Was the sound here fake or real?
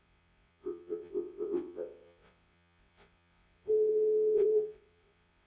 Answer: fake